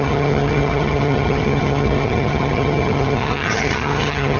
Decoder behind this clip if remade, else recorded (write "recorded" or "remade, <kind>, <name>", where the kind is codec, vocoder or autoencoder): remade, vocoder, HiFi-GAN